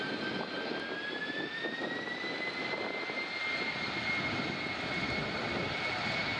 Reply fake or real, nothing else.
real